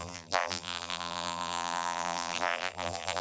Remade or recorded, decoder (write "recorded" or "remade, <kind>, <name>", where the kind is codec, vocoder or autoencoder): remade, vocoder, BigVGAN v2